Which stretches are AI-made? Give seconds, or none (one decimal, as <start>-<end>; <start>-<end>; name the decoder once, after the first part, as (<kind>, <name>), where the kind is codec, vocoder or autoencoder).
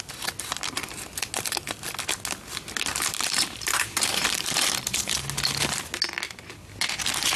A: 2.9-5.1 (vocoder, BigVGAN v2)